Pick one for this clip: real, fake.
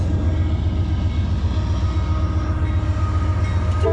real